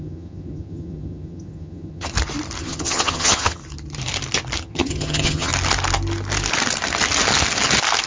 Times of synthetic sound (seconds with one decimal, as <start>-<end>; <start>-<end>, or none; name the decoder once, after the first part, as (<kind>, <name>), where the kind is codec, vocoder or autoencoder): 0.0-2.1 (vocoder, HiFi-GAN); 2.6-3.6; 4.6-5.5